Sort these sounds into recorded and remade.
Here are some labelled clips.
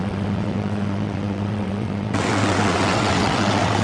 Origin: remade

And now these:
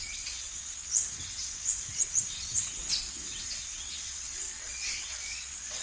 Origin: remade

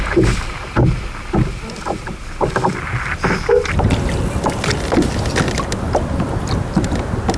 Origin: recorded